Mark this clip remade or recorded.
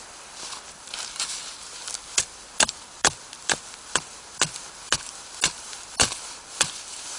recorded